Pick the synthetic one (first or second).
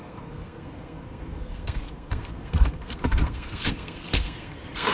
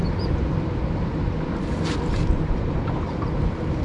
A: first